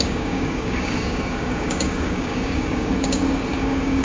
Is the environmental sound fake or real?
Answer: fake